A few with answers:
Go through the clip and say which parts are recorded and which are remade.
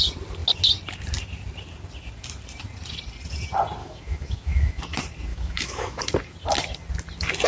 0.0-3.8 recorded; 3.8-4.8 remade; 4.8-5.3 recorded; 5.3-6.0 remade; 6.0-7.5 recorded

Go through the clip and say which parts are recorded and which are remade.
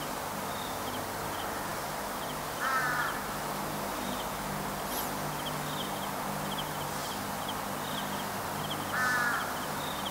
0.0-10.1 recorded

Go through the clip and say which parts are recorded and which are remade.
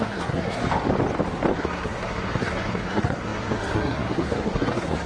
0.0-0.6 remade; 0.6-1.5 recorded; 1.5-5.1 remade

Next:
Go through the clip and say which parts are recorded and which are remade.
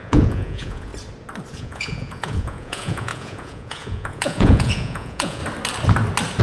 0.0-0.9 remade; 0.9-1.5 recorded; 1.5-5.4 remade; 5.4-6.4 recorded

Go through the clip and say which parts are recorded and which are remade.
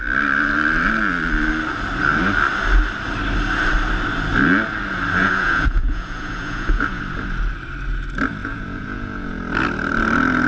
0.0-5.2 recorded; 5.2-7.0 remade; 7.0-8.4 recorded; 8.4-9.4 remade; 9.4-10.5 recorded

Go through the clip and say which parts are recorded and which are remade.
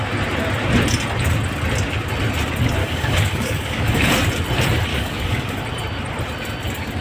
0.0-2.8 recorded; 2.8-4.1 remade; 4.1-4.9 recorded; 4.9-5.6 remade; 5.6-7.0 recorded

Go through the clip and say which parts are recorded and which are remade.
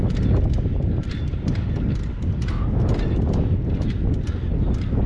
0.0-5.1 recorded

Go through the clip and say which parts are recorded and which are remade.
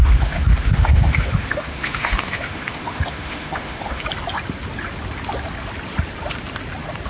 0.0-4.0 remade; 4.0-7.1 recorded